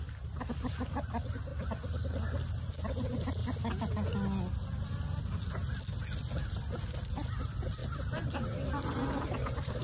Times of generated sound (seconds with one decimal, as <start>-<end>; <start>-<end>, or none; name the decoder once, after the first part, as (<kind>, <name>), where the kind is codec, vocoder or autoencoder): 7.8-9.8 (vocoder, BigVGAN v2)